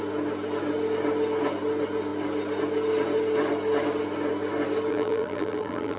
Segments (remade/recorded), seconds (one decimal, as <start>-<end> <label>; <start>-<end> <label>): 0.0-4.9 recorded; 4.9-6.0 remade